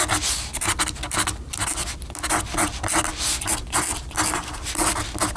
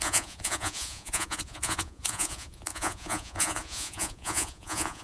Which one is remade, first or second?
second